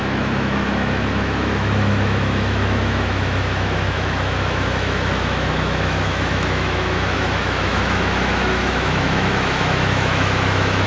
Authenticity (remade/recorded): remade